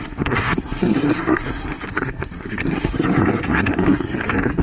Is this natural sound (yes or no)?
no